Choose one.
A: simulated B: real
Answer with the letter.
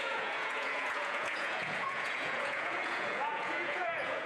A